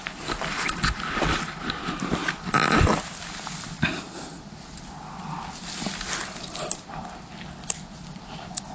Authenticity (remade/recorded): recorded